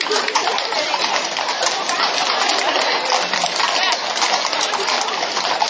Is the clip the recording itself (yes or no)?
yes